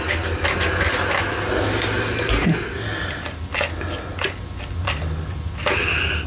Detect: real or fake real